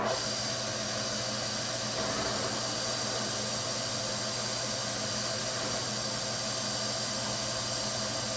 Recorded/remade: recorded